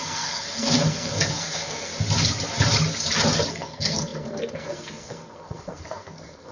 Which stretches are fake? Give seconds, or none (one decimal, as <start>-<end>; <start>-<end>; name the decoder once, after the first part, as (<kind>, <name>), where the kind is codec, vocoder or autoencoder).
0.0-1.9 (codec, SNAC); 3.5-6.5